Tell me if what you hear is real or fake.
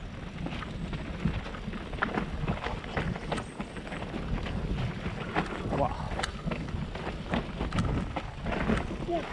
real